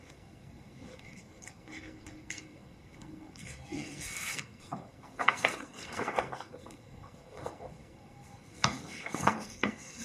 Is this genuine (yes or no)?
no